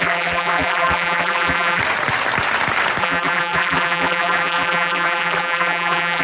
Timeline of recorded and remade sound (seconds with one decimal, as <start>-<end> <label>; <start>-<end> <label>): 0.0-1.8 remade; 1.8-3.0 recorded; 3.0-6.2 remade